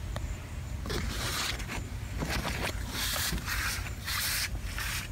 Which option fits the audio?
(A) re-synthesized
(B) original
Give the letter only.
A